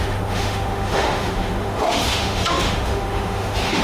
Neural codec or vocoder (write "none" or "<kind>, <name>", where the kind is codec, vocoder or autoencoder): autoencoder, DAC-VAE